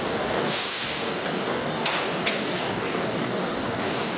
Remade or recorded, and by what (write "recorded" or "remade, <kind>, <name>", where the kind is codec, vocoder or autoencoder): remade, codec, DAC